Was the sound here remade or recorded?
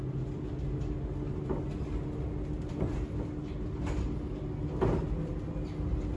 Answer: recorded